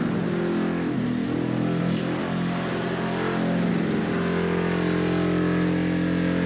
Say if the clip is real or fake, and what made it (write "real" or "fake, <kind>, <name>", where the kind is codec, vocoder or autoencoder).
real